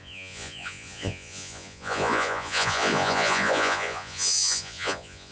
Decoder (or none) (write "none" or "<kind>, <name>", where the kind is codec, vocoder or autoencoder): vocoder, Vocos